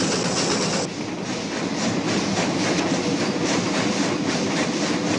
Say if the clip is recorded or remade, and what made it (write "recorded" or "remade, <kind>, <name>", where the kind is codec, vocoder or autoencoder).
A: recorded